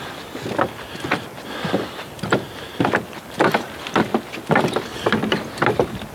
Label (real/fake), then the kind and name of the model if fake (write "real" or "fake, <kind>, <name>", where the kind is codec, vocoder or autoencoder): real